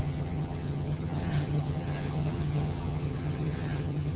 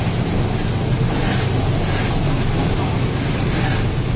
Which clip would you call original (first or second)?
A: second